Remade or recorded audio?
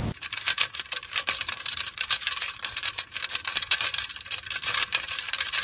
remade